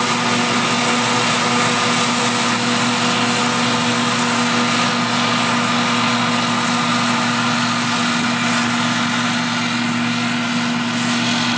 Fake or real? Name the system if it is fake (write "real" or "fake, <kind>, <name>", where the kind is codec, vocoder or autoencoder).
real